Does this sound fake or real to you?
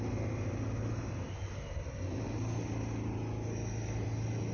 real